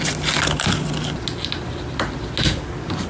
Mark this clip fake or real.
real